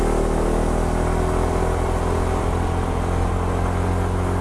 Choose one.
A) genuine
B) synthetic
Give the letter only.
A